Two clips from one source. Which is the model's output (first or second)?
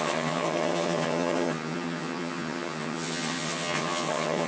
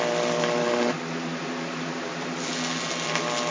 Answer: first